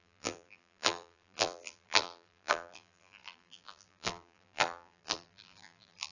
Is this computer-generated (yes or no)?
yes